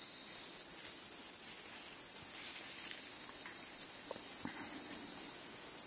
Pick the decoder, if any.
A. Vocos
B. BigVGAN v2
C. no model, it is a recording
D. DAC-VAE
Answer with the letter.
C